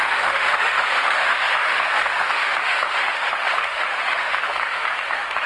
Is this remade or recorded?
remade